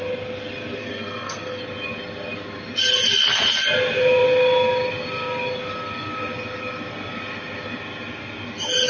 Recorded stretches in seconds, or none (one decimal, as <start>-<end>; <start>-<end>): 0.0-0.8; 1.6-8.9